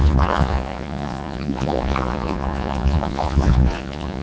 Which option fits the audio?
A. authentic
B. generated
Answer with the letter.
B